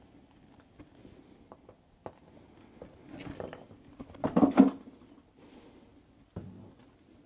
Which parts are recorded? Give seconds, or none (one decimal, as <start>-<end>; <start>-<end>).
0.0-7.3